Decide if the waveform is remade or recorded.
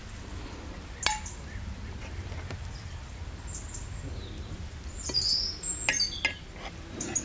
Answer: recorded